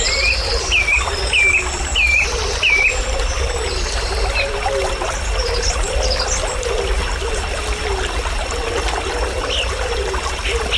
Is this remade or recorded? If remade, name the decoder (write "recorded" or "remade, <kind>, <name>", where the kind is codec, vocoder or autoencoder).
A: recorded